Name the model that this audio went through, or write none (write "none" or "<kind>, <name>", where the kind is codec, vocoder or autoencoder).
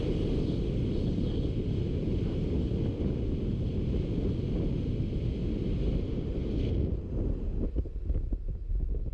none